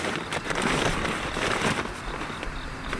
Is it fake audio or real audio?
real